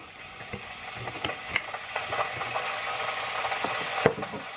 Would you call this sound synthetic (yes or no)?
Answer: yes